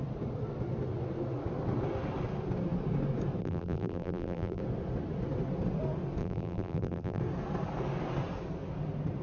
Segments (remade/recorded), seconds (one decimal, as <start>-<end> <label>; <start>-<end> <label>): 0.0-3.4 recorded; 3.4-4.6 remade; 4.6-6.2 recorded; 6.2-7.2 remade; 7.2-9.2 recorded